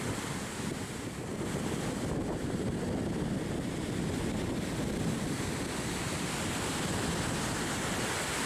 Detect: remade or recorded recorded